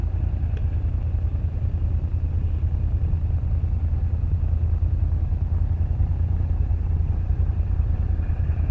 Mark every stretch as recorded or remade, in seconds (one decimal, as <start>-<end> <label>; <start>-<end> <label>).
0.0-0.6 remade; 0.6-5.6 recorded; 5.6-8.7 remade